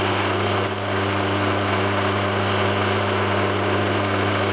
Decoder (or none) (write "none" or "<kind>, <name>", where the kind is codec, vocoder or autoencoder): none